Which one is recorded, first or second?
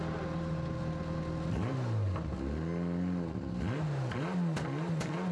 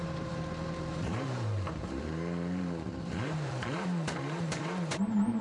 first